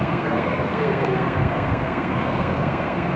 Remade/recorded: remade